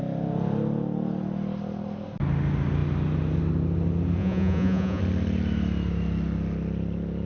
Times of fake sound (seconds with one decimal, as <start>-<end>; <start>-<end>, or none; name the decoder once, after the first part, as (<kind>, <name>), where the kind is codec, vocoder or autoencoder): 4.2-5.0 (vocoder, Vocos)